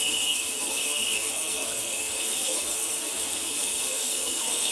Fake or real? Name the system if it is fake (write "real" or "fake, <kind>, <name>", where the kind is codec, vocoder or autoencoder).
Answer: fake, codec, SNAC